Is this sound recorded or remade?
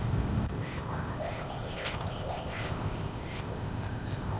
remade